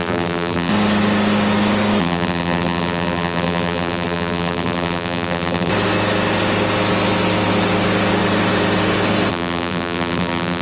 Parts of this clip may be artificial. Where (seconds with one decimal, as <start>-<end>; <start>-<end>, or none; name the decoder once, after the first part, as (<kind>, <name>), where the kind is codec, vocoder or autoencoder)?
0.0-0.7 (vocoder, BigVGAN v2); 2.0-5.7; 9.3-10.6